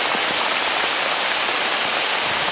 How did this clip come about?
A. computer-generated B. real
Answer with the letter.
B